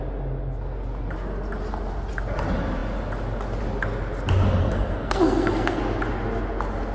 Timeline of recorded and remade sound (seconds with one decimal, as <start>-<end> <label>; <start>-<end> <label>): 0.0-4.6 recorded; 4.6-5.8 remade; 5.8-6.9 recorded